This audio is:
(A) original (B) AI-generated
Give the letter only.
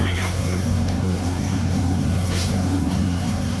B